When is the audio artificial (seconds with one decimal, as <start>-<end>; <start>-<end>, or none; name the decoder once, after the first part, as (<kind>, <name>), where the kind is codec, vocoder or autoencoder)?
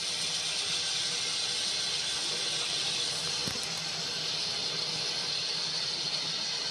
none